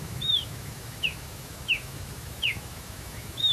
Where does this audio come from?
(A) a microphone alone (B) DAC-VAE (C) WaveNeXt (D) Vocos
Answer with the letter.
B